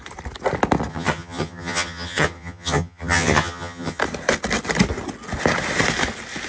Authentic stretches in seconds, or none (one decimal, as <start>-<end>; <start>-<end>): 0.0-0.9; 4.0-6.5